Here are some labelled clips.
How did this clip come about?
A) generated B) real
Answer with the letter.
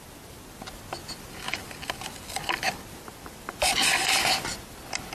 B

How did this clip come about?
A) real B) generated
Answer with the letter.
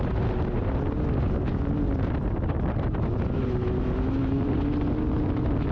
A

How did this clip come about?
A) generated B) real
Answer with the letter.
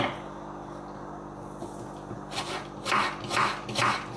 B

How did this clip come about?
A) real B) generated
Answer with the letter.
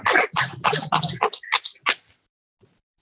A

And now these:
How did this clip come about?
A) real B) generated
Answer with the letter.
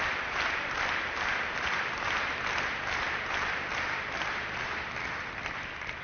A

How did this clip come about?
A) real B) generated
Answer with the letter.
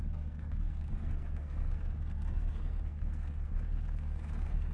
B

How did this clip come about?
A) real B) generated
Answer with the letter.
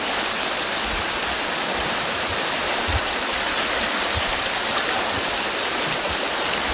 A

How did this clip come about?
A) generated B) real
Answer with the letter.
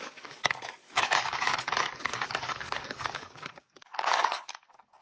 A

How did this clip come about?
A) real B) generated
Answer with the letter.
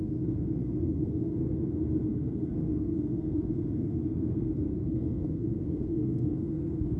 B